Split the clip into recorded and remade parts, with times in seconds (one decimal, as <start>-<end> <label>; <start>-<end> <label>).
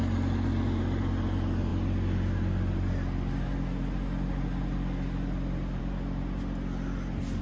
0.0-7.4 recorded